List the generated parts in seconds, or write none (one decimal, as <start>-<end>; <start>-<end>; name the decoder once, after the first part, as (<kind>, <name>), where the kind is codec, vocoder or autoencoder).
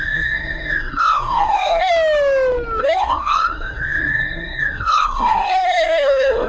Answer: 0.0-1.9 (codec, SNAC); 2.8-6.5